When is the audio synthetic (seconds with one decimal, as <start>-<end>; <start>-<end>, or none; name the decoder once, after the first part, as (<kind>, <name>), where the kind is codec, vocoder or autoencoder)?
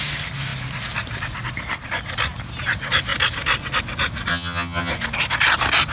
4.3-4.9 (vocoder, HiFi-GAN)